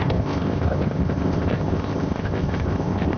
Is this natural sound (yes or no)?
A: no